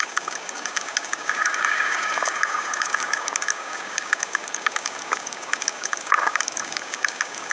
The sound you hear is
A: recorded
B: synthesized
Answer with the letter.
B